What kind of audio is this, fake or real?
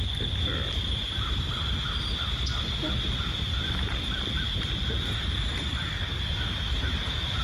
real